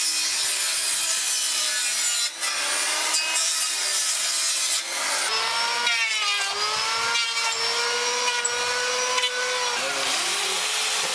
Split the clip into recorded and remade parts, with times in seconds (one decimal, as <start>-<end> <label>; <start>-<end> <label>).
0.0-11.1 recorded

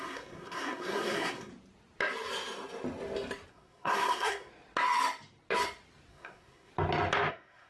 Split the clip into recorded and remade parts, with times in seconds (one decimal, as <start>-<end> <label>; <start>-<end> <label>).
0.0-1.5 remade; 1.5-3.5 recorded; 3.5-4.5 remade; 4.5-6.1 recorded; 6.1-6.7 remade; 6.7-7.3 recorded; 7.3-7.7 remade

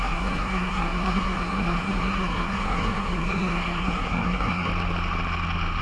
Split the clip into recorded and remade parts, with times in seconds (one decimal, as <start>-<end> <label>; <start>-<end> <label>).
0.0-4.7 remade; 4.7-5.8 recorded

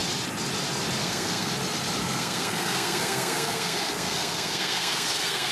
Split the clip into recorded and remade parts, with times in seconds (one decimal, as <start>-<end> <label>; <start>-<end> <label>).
0.0-1.0 recorded; 1.0-1.5 remade; 1.5-2.0 recorded; 2.0-5.5 remade